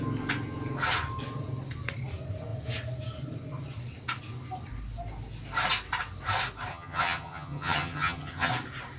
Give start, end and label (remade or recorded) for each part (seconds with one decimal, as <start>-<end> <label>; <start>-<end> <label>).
0.0-6.7 recorded; 6.7-8.5 remade; 8.5-9.0 recorded